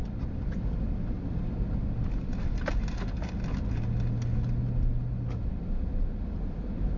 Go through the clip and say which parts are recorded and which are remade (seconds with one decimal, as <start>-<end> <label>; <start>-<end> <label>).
0.0-7.0 recorded